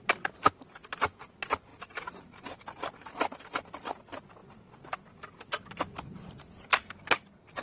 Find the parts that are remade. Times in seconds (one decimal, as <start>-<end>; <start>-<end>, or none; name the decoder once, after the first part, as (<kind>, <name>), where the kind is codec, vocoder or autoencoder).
none